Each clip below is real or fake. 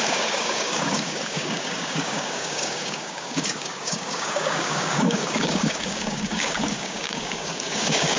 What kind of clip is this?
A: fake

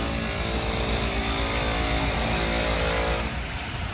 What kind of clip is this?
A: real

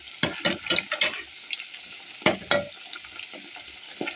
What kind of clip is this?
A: real